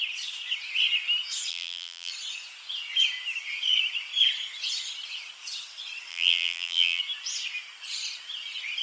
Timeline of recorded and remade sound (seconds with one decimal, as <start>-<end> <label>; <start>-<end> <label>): 0.0-1.5 recorded; 1.5-2.1 remade; 2.1-6.1 recorded; 6.1-7.0 remade; 7.0-8.8 recorded